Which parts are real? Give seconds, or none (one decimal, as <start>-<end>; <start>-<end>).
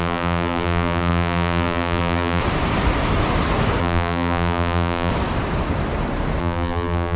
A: 2.4-3.8; 5.1-6.4